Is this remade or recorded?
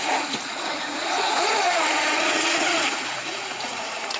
remade